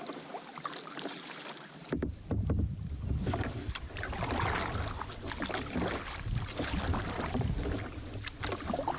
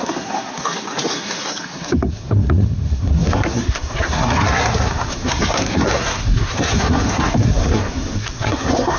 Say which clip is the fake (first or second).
second